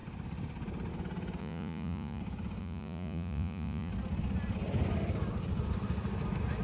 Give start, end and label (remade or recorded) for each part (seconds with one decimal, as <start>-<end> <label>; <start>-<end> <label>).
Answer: 0.0-1.4 recorded; 1.4-2.2 remade; 2.2-2.6 recorded; 2.6-3.9 remade; 3.9-6.6 recorded